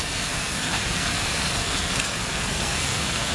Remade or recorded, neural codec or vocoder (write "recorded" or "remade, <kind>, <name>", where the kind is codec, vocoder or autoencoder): remade, codec, SNAC